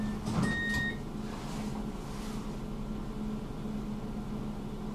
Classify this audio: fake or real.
real